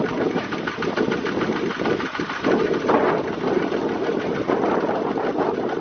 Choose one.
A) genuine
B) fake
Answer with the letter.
A